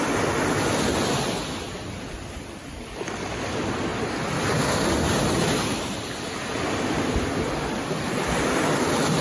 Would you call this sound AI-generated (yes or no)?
no